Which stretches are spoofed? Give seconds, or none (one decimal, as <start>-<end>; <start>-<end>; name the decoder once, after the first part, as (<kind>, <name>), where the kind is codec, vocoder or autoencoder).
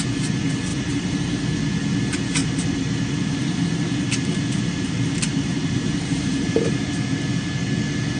0.7-1.3 (vocoder, BigVGAN v2); 2.4-7.2